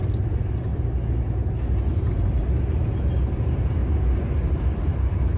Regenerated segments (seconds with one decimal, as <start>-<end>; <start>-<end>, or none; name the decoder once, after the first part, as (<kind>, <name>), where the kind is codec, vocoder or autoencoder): 0.0-0.7 (vocoder, BigVGAN v2); 1.9-3.8; 4.8-5.4